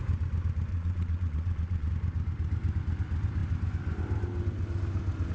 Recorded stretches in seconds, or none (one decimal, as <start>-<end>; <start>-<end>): 0.0-0.7; 1.9-5.3